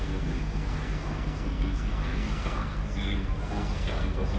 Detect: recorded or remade remade